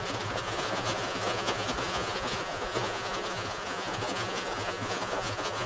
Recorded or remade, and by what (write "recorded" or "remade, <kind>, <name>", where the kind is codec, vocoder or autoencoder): remade, vocoder, Vocos